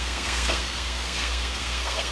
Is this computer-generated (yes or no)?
yes